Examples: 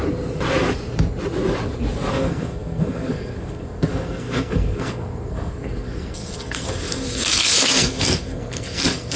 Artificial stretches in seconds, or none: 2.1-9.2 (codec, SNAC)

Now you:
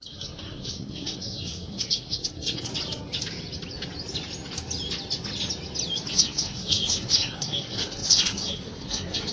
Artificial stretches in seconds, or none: 0.0-2.7 (codec, SNAC); 6.1-9.3

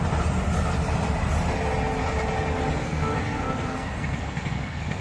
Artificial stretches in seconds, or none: 2.8-5.0 (codec, SNAC)